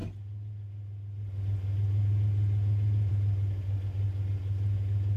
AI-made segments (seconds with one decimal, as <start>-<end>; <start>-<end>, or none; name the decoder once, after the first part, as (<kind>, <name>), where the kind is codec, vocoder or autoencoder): none